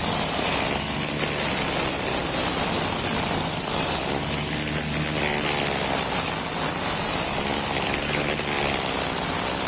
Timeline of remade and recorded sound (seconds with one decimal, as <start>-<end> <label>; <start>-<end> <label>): 0.0-9.7 recorded